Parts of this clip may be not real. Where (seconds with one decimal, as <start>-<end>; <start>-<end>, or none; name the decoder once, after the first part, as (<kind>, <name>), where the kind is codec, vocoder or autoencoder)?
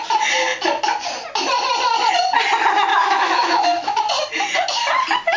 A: 2.9-4.0 (autoencoder, DAC-VAE)